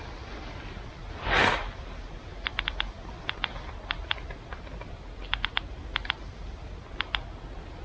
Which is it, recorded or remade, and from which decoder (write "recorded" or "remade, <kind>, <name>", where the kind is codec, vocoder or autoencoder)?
recorded